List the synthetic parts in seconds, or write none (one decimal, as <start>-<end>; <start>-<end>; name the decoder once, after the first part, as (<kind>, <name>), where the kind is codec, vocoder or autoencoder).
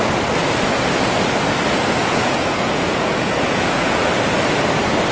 2.0-4.0 (vocoder, Vocos)